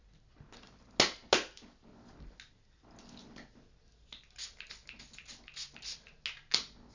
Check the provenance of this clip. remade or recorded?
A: recorded